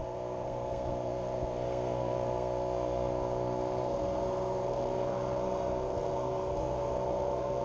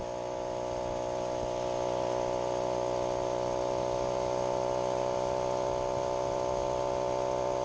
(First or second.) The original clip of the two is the second